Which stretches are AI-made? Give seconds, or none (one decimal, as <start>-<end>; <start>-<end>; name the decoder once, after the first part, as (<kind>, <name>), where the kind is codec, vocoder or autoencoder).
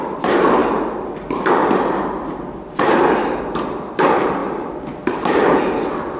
none